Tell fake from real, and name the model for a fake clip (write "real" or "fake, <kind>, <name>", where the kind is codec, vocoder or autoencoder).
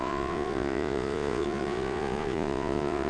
fake, vocoder, Vocos